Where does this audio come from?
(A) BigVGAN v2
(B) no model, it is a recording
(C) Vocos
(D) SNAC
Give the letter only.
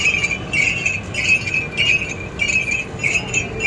B